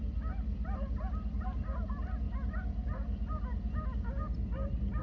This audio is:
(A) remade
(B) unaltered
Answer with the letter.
B